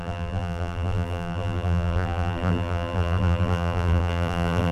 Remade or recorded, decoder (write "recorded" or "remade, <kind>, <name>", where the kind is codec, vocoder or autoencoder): remade, vocoder, BigVGAN v2